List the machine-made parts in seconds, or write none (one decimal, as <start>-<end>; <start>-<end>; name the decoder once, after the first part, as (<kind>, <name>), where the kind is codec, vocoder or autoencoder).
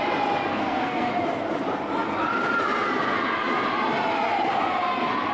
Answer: 0.5-1.1 (codec, SNAC)